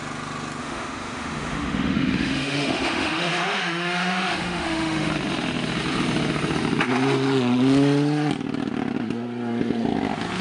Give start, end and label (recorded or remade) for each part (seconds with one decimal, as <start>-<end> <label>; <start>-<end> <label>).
0.0-0.6 recorded; 0.6-5.1 remade; 5.1-10.4 recorded